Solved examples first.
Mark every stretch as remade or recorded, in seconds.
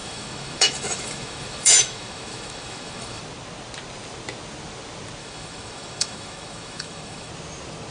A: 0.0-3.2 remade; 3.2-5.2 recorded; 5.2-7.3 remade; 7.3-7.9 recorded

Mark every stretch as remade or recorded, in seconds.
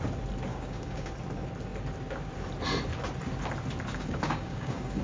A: 0.0-0.5 recorded; 0.5-1.1 remade; 1.1-3.9 recorded; 3.9-5.0 remade